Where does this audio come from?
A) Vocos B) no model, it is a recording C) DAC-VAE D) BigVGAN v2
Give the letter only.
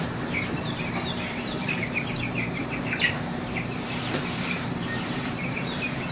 D